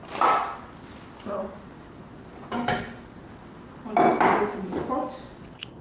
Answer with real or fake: real